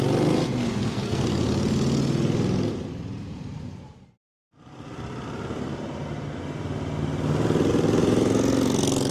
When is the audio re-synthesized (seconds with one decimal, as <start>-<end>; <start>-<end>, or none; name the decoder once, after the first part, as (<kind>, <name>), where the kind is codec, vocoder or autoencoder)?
0.7-1.3 (codec, SNAC)